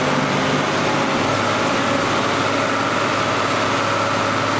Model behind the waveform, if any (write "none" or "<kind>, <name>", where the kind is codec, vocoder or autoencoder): none